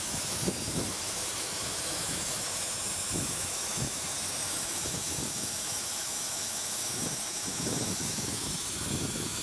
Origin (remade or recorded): remade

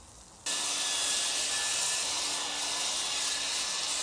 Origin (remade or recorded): recorded